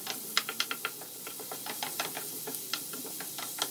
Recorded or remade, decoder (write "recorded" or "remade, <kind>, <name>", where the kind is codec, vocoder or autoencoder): recorded